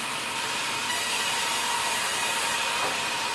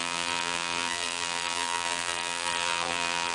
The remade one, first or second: second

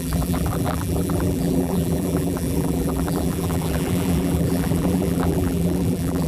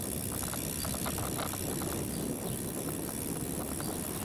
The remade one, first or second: first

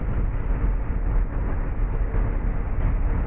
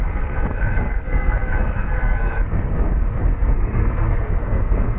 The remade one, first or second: second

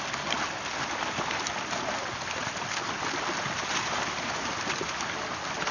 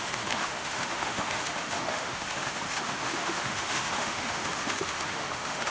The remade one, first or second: second